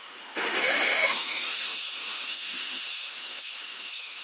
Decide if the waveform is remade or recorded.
remade